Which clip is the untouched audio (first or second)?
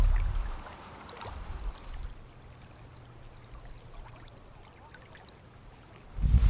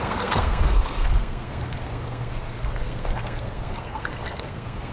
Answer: first